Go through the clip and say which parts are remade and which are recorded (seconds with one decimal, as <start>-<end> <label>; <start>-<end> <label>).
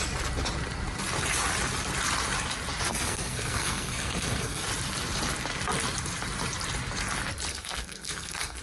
0.0-2.9 recorded; 2.9-4.6 remade; 4.6-7.5 recorded; 7.5-8.6 remade